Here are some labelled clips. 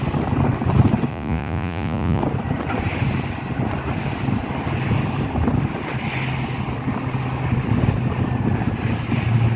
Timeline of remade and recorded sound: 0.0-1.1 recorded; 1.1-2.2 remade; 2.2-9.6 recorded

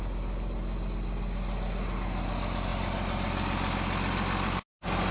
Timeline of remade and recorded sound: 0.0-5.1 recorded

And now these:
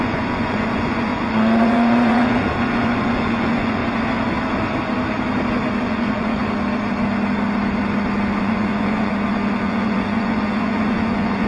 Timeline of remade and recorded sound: 0.0-3.8 remade; 3.8-5.8 recorded; 5.8-6.4 remade; 6.4-8.4 recorded; 8.4-9.1 remade; 9.1-9.6 recorded; 9.6-11.5 remade